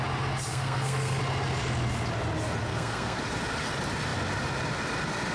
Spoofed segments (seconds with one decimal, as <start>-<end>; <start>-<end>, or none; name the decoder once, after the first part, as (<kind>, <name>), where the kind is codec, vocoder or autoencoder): 0.5-1.2 (codec, SNAC); 2.7-3.2

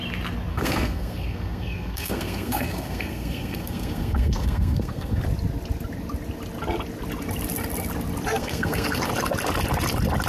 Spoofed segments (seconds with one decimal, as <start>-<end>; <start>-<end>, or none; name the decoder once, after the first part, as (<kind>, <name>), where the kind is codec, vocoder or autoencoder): 0.5-5.2 (codec, SNAC); 8.3-9.1